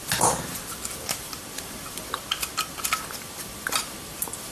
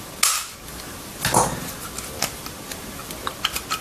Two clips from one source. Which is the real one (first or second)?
second